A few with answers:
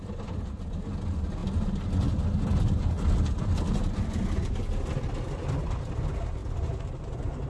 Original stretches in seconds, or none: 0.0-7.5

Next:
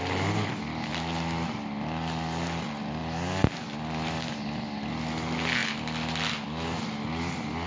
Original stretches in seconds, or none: 0.0-7.7

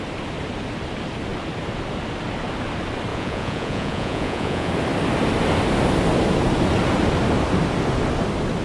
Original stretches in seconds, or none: 0.0-3.1; 4.7-8.6